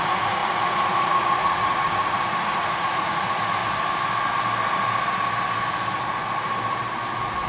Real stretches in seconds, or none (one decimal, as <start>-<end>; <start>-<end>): 3.6-7.5